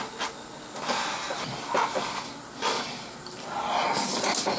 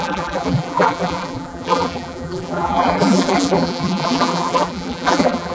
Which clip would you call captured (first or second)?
first